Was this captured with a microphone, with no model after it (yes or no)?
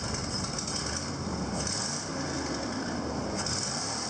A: yes